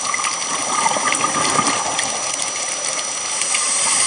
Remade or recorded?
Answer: recorded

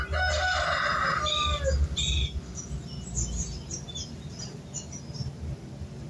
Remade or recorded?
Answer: recorded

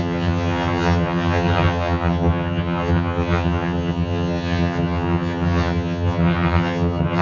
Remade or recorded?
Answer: remade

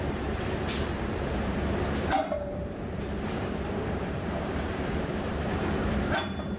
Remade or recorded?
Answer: remade